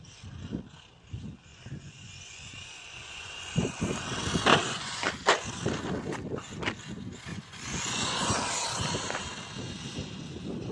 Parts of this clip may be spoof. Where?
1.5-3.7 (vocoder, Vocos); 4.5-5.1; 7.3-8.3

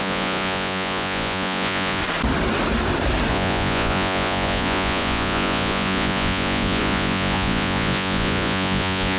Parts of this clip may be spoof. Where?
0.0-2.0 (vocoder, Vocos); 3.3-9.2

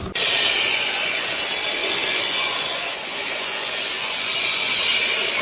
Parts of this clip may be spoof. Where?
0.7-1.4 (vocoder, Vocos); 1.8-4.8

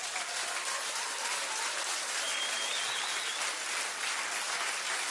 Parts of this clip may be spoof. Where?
none

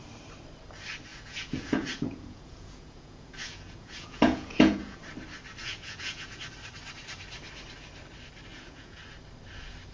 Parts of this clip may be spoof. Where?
1.1-5.0 (vocoder, Vocos); 5.6-6.4; 8.5-9.0